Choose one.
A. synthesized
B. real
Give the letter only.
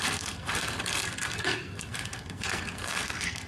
A